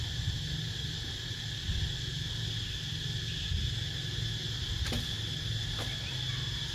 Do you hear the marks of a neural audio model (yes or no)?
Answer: no